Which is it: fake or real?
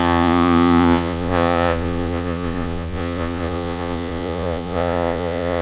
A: fake